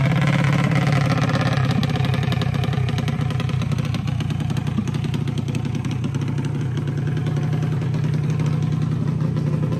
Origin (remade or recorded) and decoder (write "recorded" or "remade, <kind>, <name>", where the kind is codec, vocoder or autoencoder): recorded